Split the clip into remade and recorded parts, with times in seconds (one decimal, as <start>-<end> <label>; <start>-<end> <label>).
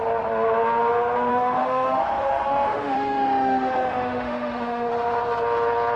0.0-1.3 recorded; 1.3-4.9 remade; 4.9-6.0 recorded